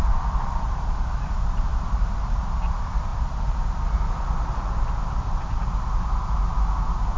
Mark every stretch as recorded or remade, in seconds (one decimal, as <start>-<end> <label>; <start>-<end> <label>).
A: 0.0-7.2 recorded